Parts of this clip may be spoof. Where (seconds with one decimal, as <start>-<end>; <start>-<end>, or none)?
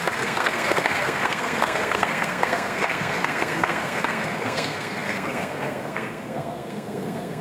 0.0-7.4